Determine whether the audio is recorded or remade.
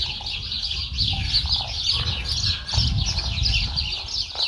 recorded